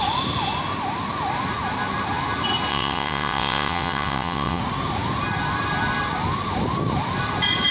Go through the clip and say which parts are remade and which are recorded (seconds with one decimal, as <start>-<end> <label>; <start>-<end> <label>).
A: 0.0-2.7 recorded; 2.7-4.6 remade; 4.6-7.7 recorded